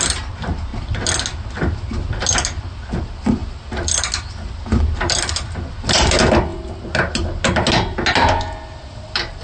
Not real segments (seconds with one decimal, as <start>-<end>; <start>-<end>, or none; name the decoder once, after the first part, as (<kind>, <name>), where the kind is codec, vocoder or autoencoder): none